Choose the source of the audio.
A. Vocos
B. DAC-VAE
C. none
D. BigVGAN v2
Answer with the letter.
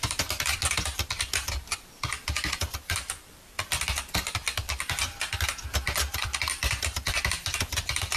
D